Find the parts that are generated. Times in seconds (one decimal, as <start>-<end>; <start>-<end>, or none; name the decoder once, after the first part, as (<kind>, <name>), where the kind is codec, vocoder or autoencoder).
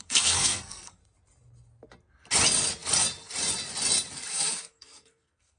0.0-1.0 (codec, SNAC); 4.3-5.6